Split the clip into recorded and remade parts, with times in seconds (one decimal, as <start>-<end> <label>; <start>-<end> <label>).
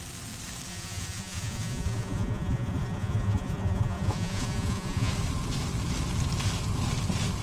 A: 0.0-0.7 recorded; 0.7-5.1 remade; 5.1-7.4 recorded